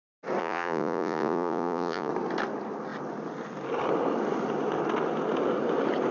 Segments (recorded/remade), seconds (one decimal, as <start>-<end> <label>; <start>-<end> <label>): 0.0-0.4 recorded; 0.4-2.1 remade; 2.1-6.1 recorded